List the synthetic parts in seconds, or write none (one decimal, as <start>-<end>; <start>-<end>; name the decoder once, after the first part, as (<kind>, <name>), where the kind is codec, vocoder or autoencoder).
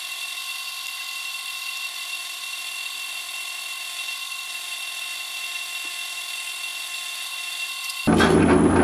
none